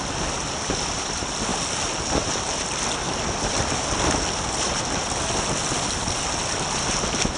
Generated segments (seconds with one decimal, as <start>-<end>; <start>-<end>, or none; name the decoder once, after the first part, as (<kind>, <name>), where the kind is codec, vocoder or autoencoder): none